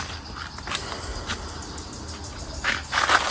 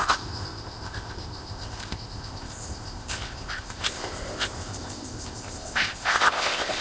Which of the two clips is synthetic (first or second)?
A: second